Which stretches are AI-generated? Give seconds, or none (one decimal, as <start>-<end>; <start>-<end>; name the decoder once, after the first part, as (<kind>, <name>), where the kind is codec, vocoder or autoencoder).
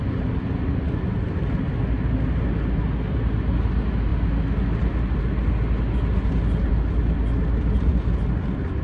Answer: none